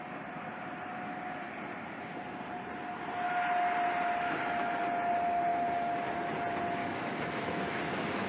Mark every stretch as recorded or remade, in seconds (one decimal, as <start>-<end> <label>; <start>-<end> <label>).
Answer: 0.0-6.8 recorded; 6.8-7.6 remade; 7.6-8.3 recorded